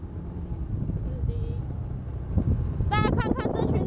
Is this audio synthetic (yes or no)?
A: no